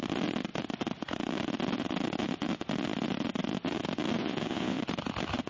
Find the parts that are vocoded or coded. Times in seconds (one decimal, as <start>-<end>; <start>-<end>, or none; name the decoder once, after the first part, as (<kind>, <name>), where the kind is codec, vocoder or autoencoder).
4.2-4.8 (vocoder, Vocos)